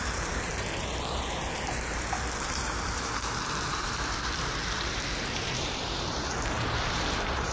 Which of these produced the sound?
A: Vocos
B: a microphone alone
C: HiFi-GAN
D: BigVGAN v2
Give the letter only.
D